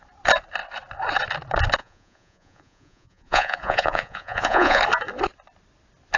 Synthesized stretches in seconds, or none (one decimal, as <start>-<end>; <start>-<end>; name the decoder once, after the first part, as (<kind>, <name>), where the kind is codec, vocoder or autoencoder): 1.8-4.8 (vocoder, Vocos)